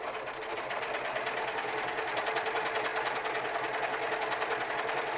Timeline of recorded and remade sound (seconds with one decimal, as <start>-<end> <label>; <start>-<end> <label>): 0.0-2.9 remade; 2.9-4.7 recorded; 4.7-5.2 remade